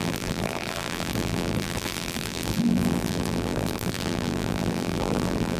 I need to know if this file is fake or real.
fake